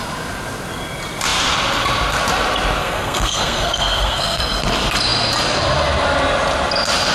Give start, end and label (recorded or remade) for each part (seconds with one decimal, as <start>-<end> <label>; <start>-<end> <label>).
0.0-2.8 recorded; 2.8-4.4 remade; 4.4-7.1 recorded